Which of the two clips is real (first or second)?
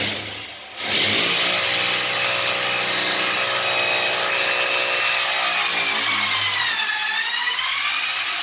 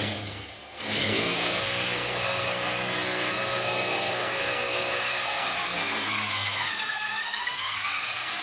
first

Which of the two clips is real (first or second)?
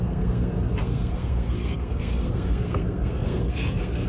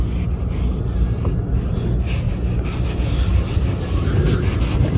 second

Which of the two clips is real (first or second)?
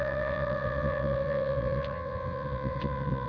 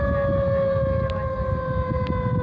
second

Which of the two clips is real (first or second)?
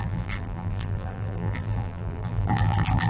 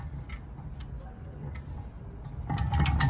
second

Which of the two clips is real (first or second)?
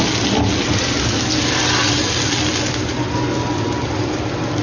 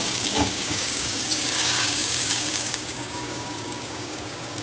first